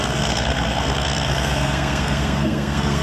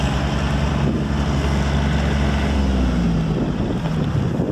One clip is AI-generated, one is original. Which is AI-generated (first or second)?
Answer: first